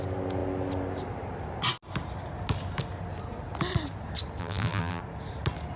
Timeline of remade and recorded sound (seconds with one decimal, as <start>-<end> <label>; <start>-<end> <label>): 0.0-4.4 recorded; 4.4-5.0 remade; 5.0-5.8 recorded